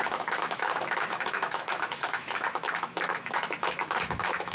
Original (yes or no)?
no